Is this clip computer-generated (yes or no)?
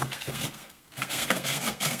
yes